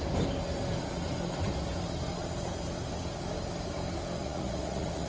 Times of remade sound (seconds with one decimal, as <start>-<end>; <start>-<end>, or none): 4.2-5.1